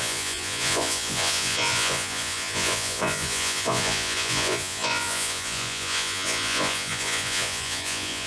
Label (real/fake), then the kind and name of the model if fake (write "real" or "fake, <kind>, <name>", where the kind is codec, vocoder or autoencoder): fake, vocoder, Vocos